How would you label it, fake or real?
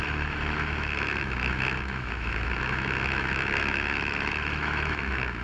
fake